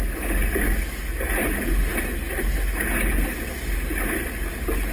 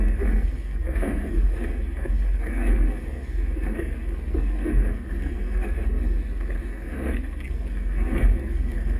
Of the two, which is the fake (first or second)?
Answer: second